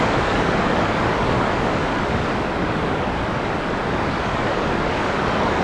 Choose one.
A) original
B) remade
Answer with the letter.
B